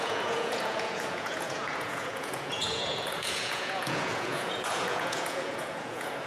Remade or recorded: remade